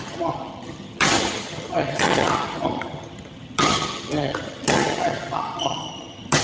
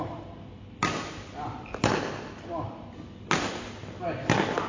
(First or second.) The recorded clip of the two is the second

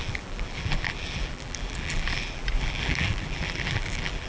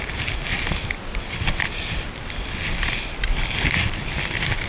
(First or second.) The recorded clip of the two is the second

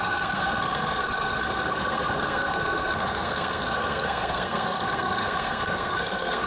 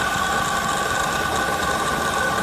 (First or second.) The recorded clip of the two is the second